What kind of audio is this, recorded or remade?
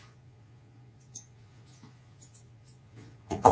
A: remade